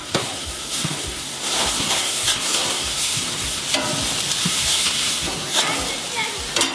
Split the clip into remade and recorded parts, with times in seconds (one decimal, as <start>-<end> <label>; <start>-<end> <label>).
0.0-3.6 remade; 3.6-4.4 recorded; 4.4-5.6 remade; 5.6-6.7 recorded